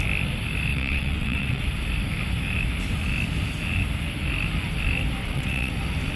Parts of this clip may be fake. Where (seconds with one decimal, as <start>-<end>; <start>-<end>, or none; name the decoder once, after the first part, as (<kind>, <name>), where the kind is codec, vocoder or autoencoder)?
0.7-1.6 (vocoder, WaveNeXt); 5.2-5.7

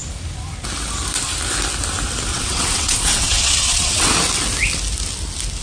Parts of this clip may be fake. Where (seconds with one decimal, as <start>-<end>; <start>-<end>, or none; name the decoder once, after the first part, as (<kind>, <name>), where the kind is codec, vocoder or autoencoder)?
2.3-4.1 (vocoder, WaveNeXt)

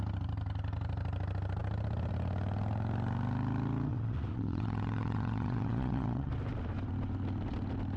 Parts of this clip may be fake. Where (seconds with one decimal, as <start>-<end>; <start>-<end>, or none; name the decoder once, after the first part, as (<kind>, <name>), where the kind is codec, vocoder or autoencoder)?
3.9-6.3 (vocoder, WaveNeXt)

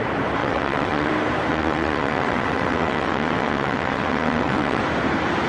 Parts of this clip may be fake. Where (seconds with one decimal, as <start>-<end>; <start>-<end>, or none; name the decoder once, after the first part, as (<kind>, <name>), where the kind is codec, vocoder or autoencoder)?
0.4-1.1 (vocoder, WaveNeXt); 1.5-4.8

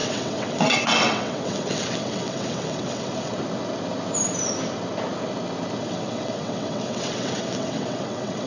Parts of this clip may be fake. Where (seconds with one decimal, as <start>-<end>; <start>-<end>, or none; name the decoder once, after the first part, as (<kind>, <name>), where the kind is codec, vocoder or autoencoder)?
0.0-3.3 (vocoder, WaveNeXt); 5.8-8.5

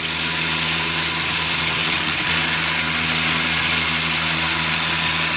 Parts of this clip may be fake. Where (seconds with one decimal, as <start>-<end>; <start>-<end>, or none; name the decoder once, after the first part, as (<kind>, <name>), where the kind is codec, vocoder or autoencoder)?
1.8-2.3 (vocoder, WaveNeXt)

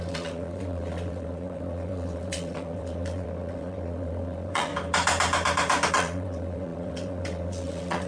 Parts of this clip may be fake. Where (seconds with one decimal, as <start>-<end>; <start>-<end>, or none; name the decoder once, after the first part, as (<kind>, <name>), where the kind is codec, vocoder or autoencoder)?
0.0-4.7 (vocoder, WaveNeXt); 5.9-8.1

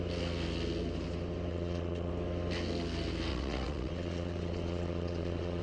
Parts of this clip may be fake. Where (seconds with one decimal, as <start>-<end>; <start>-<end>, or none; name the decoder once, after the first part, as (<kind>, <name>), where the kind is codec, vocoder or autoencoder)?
1.5-2.1 (vocoder, WaveNeXt); 3.3-5.6